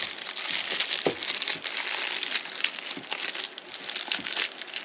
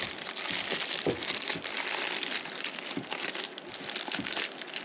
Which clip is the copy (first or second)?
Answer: second